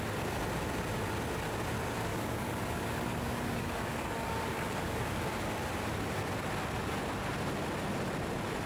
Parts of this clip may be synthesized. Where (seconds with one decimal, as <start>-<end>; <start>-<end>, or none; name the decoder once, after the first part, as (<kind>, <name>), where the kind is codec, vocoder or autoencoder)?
2.1-5.2 (codec, DAC)